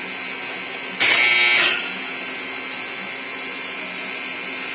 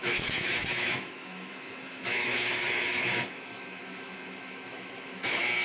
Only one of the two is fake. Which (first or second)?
second